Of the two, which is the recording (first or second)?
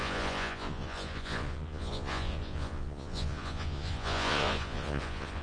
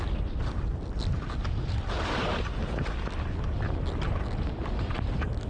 second